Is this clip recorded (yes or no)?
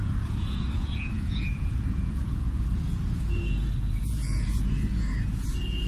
no